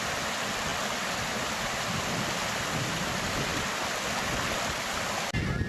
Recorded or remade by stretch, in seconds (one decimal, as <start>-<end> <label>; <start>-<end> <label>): 0.0-5.7 recorded